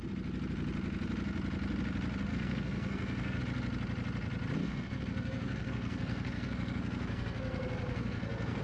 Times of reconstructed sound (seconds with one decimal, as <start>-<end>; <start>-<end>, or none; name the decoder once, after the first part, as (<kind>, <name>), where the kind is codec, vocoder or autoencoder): 2.3-3.4 (codec, SNAC); 4.6-8.6